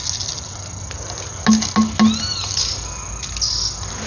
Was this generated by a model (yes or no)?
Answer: no